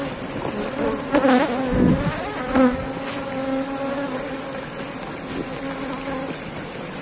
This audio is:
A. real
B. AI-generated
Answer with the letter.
A